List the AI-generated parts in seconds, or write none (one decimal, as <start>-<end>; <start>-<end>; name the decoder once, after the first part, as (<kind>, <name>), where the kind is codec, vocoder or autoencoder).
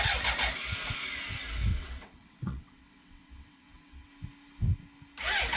1.7-4.1 (vocoder, WaveNeXt)